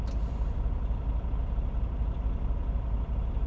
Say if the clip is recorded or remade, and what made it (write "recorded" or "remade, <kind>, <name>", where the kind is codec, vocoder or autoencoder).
recorded